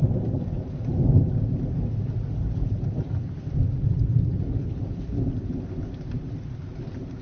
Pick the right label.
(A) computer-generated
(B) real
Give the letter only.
B